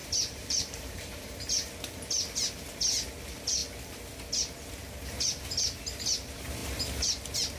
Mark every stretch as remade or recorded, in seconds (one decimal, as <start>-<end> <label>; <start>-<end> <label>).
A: 0.0-1.7 remade; 1.7-7.6 recorded